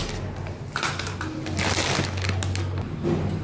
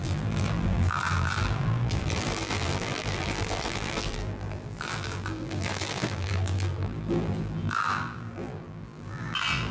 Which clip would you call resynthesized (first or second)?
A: second